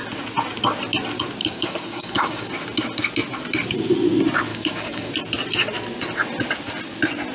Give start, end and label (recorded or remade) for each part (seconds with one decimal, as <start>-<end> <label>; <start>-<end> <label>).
0.0-1.4 recorded; 1.4-2.5 remade; 2.5-4.5 recorded; 4.5-5.1 remade; 5.1-7.3 recorded